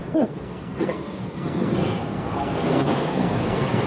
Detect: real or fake fake